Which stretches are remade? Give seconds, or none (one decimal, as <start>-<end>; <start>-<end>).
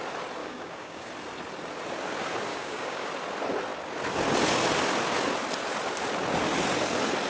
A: 0.4-1.1; 2.5-3.1